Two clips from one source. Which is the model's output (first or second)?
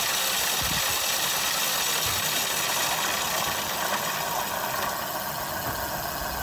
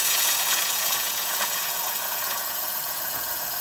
second